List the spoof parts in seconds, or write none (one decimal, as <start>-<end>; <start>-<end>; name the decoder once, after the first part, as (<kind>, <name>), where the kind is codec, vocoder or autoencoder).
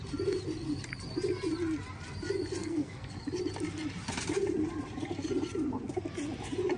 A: 2.6-3.1 (codec, SNAC)